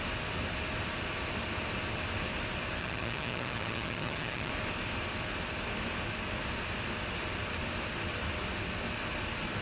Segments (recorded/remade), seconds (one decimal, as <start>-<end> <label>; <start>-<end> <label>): 0.0-2.8 recorded; 2.8-4.5 remade; 4.5-9.6 recorded